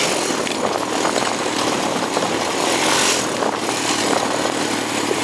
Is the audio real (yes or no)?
yes